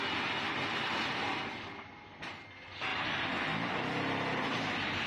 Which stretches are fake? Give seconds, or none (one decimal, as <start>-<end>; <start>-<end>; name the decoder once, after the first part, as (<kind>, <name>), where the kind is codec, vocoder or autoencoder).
none